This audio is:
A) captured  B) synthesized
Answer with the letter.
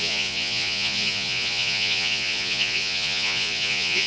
B